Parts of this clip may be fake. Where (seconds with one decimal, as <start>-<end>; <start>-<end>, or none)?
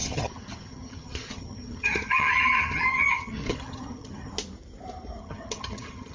0.0-4.3; 5.2-6.1